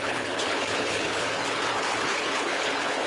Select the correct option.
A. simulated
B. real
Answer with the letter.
A